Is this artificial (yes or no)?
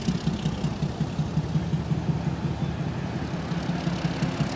no